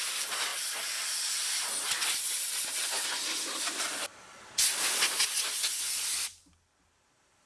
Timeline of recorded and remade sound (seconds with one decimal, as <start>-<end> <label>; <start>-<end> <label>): 0.0-7.5 recorded